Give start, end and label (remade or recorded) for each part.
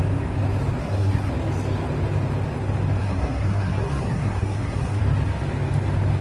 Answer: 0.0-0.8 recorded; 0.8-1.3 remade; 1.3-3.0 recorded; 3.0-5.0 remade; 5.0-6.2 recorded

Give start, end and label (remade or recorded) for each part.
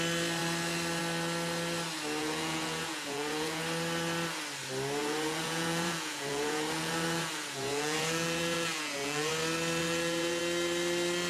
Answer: 0.0-2.2 recorded; 2.2-3.6 remade; 3.6-5.0 recorded; 5.0-9.3 remade; 9.3-9.8 recorded; 9.8-10.4 remade; 10.4-11.3 recorded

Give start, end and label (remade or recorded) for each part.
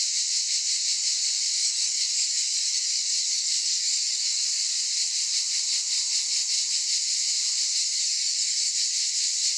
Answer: 0.0-1.6 recorded; 1.6-4.6 remade; 4.6-7.8 recorded; 7.8-8.7 remade; 8.7-9.6 recorded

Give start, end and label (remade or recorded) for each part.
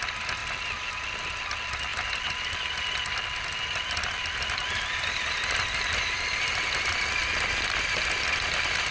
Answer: 0.0-8.9 recorded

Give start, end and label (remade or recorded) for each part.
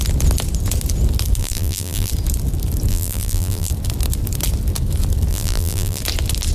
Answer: 0.0-1.4 recorded; 1.4-2.1 remade; 2.1-2.9 recorded; 2.9-3.7 remade; 3.7-5.3 recorded; 5.3-6.0 remade; 6.0-6.5 recorded